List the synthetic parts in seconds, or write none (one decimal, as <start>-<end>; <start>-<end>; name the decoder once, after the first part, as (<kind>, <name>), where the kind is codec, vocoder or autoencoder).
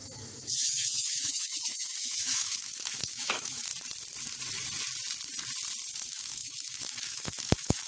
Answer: 0.0-3.7 (autoencoder, DAC-VAE); 5.9-7.9